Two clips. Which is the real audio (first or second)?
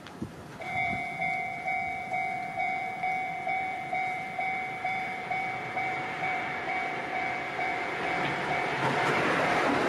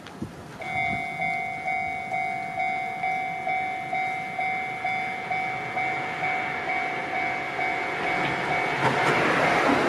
second